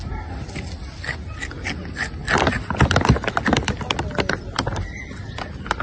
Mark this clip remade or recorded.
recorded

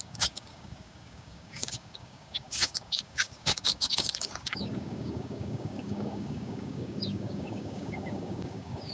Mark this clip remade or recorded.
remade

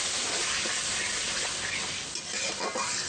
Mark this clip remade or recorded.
recorded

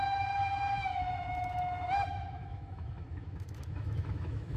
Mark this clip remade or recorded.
remade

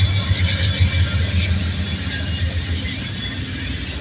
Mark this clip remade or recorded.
recorded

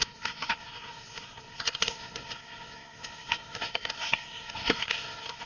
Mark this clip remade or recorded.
remade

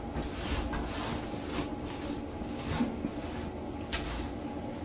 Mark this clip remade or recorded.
recorded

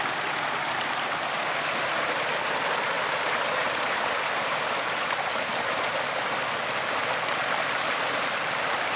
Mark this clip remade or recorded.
recorded